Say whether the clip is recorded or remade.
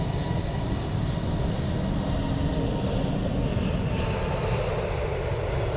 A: recorded